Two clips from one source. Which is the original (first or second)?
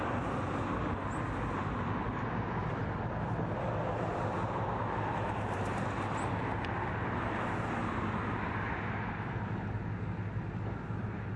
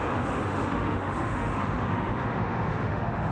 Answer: first